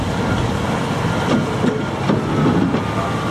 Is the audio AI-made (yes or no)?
no